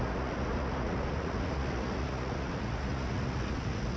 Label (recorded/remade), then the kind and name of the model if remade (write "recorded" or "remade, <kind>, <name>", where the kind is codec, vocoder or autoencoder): remade, vocoder, Vocos